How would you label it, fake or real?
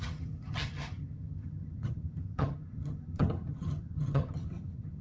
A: fake